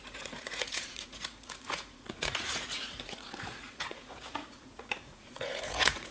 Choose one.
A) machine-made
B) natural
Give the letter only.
A